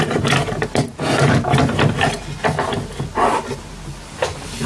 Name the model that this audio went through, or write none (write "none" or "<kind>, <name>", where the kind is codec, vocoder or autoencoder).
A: none